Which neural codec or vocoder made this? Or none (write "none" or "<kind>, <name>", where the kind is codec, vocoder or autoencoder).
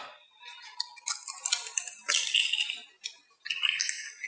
none